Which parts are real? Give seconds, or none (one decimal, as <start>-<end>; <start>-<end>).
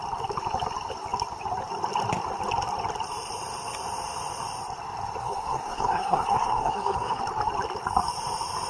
0.0-5.2; 7.2-8.7